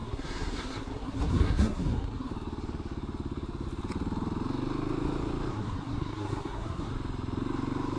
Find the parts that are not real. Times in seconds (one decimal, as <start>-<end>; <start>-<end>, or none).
0.0-2.3; 5.5-6.9